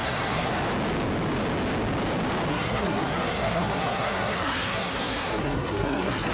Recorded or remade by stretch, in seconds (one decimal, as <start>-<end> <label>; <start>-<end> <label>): 0.0-0.5 remade; 0.5-2.5 recorded; 2.5-6.3 remade